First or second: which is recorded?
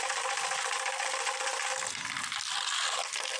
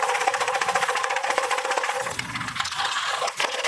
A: first